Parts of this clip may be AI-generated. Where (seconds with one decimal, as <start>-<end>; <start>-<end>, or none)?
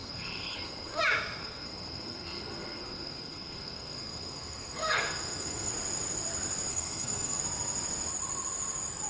0.0-1.0; 1.4-5.7; 6.7-7.4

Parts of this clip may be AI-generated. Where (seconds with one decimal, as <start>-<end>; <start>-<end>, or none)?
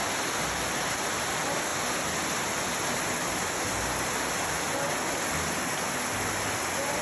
none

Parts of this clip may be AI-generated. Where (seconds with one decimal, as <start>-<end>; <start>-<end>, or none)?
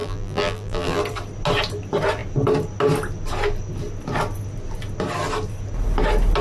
0.0-1.0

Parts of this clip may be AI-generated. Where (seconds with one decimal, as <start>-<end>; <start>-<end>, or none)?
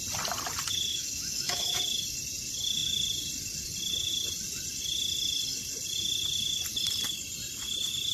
0.9-1.8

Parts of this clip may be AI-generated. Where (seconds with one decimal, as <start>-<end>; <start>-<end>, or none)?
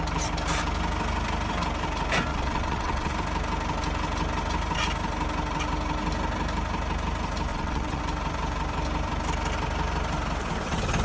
2.3-3.1; 7.5-8.0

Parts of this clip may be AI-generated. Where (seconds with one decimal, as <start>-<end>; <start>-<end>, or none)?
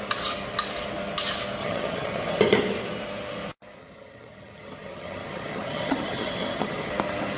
1.6-2.4; 3.8-6.9